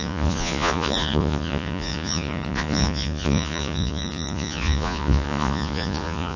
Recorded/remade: remade